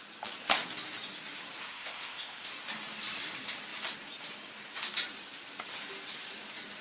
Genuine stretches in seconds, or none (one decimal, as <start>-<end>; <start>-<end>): 0.0-1.7; 2.5-6.8